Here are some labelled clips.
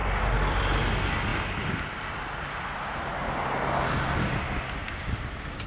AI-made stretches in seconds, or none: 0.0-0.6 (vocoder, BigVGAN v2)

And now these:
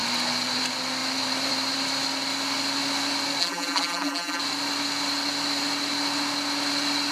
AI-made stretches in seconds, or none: 3.4-4.4 (vocoder, BigVGAN v2)

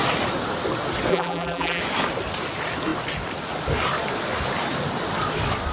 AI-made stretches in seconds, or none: 1.1-1.8 (vocoder, BigVGAN v2)

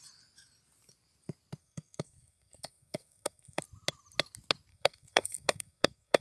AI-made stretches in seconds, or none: 1.6-3.6 (codec, SNAC); 4.7-6.2

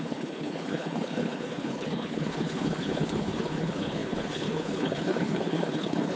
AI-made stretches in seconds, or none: 0.0-6.2 (codec, HILCodec)

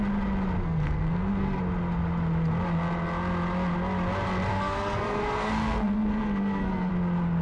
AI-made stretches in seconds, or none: 0.6-1.6 (codec, SNAC); 4.5-6.9

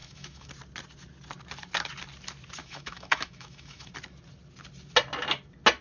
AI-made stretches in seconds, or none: 0.0-0.5 (autoencoder, DAC-VAE); 2.6-3.9

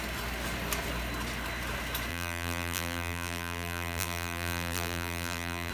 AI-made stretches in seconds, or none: 2.1-5.7 (vocoder, BigVGAN v2)